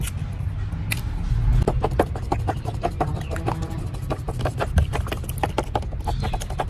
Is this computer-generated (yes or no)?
no